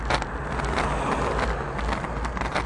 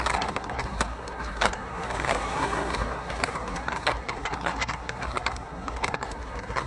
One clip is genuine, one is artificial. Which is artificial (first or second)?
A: second